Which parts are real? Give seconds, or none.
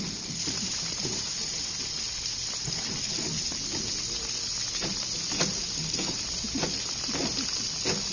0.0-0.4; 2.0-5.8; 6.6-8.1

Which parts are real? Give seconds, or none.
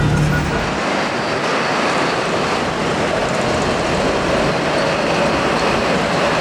0.0-1.7; 2.7-6.4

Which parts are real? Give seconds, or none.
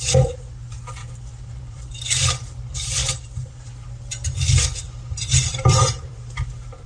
0.0-1.0; 1.9-3.0; 3.6-5.5; 6.4-6.9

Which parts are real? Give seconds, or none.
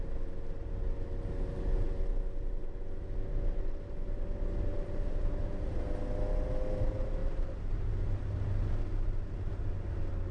0.0-4.7; 5.3-7.2; 8.8-10.3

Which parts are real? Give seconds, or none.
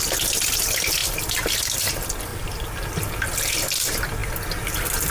0.0-2.3; 3.0-5.1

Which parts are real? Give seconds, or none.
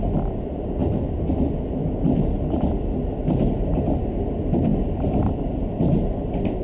0.0-4.7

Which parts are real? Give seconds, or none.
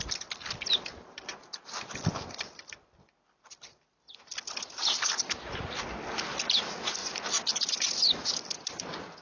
0.0-9.2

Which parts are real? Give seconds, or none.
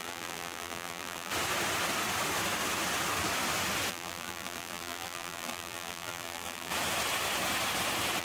1.3-3.9; 6.7-8.2